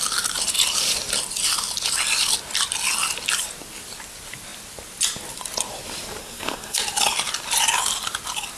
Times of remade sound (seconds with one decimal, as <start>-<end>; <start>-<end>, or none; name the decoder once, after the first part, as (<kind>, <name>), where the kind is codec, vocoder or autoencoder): 6.2-6.8 (codec, SNAC)